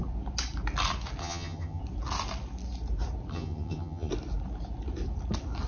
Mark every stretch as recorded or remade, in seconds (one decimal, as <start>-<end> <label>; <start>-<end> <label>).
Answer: 0.0-1.2 recorded; 1.2-1.8 remade; 1.8-3.3 recorded; 3.3-4.1 remade; 4.1-5.7 recorded